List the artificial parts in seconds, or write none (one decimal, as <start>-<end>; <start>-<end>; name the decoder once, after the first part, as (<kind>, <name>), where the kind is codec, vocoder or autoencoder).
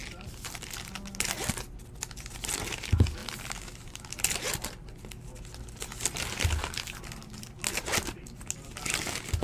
none